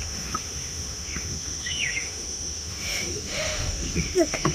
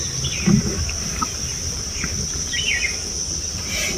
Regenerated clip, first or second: first